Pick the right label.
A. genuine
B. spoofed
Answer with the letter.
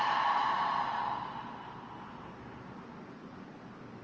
A